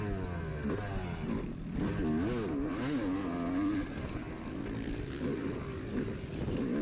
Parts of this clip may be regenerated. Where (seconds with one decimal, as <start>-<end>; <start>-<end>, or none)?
none